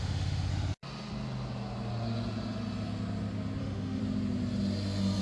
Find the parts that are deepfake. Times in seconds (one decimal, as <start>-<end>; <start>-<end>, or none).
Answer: 0.0-0.5; 3.6-4.0